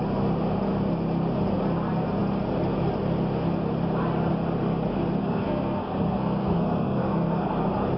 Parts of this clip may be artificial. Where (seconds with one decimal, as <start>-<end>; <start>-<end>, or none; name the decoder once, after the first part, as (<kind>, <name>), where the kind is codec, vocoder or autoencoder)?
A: 5.2-7.5 (codec, SNAC)